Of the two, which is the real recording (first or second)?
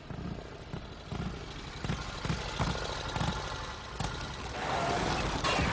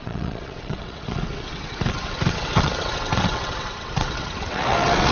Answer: first